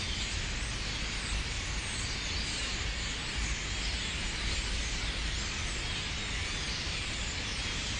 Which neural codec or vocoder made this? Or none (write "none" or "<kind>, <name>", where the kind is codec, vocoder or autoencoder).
none